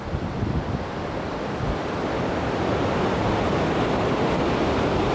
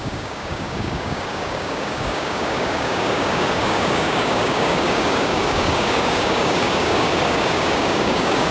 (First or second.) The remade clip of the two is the second